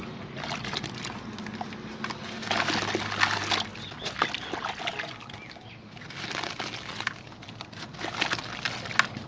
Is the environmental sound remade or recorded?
recorded